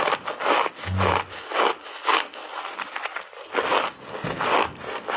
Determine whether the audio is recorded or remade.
recorded